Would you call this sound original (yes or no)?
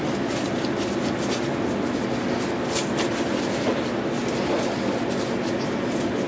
yes